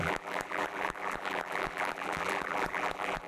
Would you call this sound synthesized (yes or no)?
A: yes